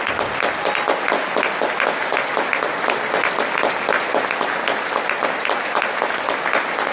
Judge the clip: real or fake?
real